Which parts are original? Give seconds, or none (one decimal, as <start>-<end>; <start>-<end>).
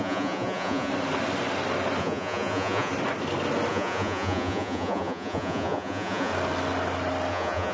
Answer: 0.9-2.0; 2.9-3.7; 6.3-7.3